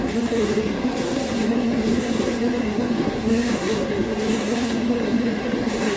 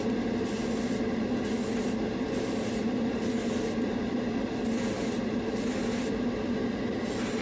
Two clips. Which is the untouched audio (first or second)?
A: second